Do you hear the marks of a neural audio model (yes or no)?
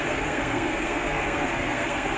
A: yes